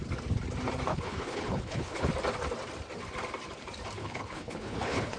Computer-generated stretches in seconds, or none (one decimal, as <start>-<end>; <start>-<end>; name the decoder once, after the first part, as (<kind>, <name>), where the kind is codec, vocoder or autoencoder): 0.9-2.1 (codec, HILCodec); 4.0-5.2